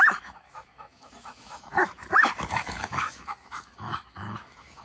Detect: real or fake fake